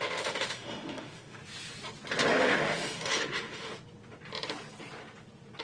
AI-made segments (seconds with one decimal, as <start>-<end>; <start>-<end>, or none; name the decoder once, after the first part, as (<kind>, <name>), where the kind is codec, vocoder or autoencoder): 0.0-1.4 (autoencoder, DAC-VAE); 2.3-3.7